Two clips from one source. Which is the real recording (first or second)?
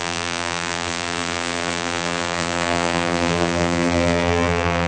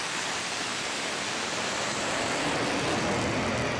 second